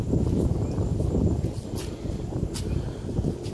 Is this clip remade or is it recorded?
recorded